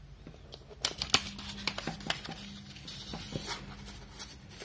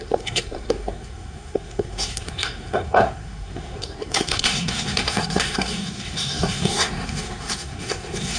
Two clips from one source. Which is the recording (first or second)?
first